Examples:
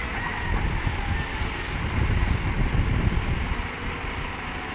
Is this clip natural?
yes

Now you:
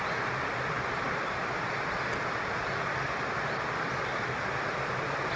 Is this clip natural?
yes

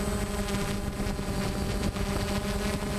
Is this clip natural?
yes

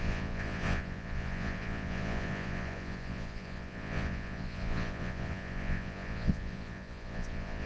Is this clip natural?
no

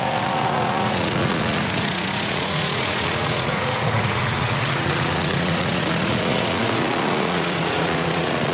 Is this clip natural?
no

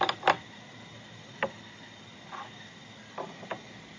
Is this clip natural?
yes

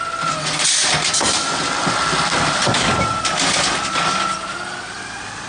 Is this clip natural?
yes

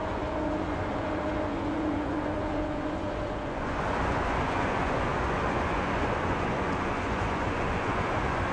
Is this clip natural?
no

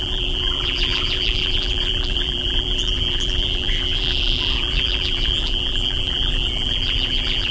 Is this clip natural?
no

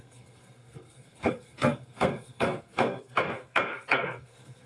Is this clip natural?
no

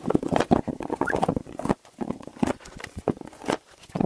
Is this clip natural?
no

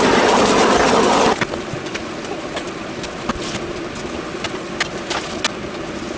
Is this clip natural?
yes